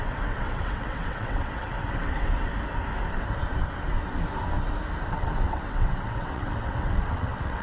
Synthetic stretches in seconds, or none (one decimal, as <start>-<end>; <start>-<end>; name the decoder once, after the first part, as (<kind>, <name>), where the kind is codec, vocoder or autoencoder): 0.0-2.5 (vocoder, WaveNeXt); 5.1-7.6